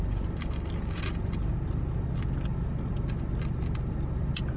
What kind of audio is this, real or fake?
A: real